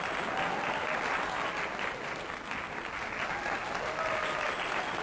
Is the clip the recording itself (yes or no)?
yes